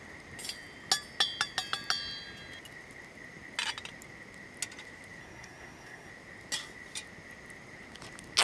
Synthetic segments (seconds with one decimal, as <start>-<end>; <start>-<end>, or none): 5.2-6.1